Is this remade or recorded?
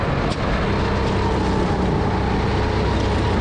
recorded